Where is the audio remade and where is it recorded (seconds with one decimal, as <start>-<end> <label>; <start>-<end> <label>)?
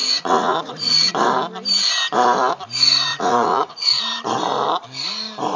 0.0-1.1 remade; 1.1-3.1 recorded; 3.1-4.0 remade; 4.0-5.6 recorded